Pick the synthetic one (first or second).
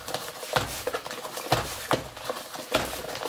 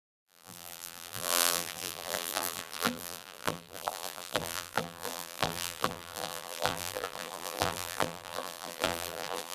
second